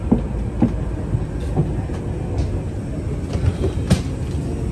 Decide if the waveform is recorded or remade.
recorded